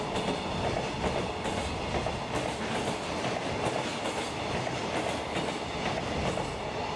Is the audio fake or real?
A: real